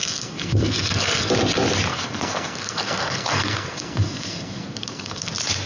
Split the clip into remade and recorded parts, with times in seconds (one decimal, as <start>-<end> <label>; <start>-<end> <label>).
0.0-1.3 remade; 1.3-1.9 recorded; 1.9-5.3 remade; 5.3-5.7 recorded